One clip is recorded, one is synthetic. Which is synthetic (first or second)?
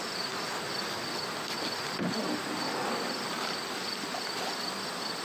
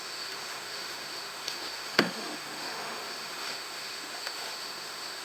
second